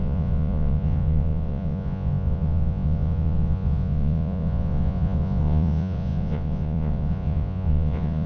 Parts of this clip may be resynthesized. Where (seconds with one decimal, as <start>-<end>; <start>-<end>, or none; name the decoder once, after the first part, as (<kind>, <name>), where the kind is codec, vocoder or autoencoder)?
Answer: 0.0-8.3 (vocoder, Vocos)